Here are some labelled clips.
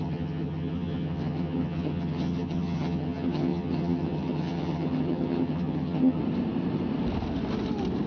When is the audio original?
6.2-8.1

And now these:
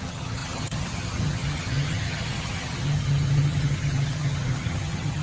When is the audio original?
none

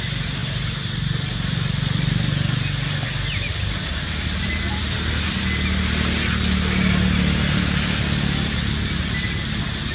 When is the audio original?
0.0-9.9